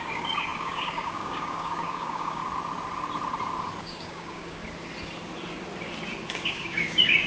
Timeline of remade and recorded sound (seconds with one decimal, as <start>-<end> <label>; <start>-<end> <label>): 0.0-2.4 remade; 2.4-3.8 recorded; 3.8-4.6 remade; 4.6-6.4 recorded; 6.4-7.3 remade